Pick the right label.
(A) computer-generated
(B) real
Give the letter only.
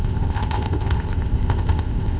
A